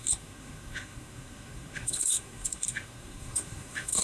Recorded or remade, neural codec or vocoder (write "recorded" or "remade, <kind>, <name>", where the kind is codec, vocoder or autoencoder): remade, codec, SNAC